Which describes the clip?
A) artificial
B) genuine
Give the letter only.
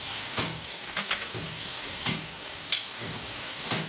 A